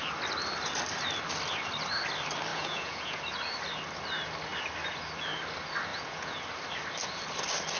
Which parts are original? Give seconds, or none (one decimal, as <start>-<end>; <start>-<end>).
0.0-2.5; 3.2-5.9; 6.4-7.8